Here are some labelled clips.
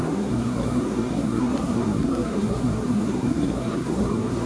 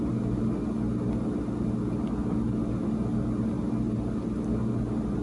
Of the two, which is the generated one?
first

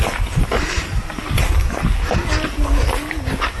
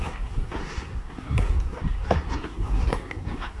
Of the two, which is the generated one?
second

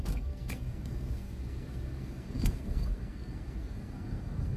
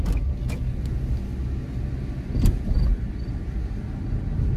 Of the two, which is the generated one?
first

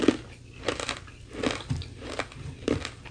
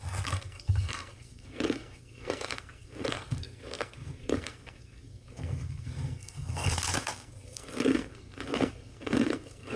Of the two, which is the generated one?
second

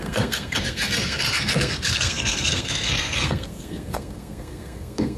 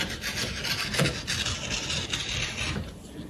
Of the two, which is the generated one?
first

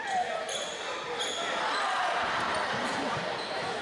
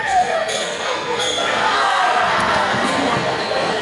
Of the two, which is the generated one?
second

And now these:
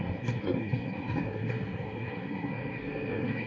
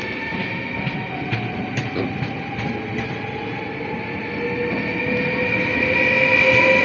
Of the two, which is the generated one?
first